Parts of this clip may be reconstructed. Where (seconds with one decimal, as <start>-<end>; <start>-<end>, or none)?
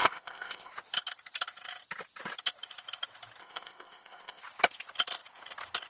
0.0-0.7; 3.4-4.4